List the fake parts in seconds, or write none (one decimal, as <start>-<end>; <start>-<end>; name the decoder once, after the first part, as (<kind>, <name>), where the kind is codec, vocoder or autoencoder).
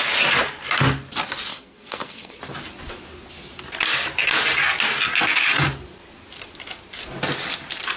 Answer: 1.5-2.4 (codec, SNAC)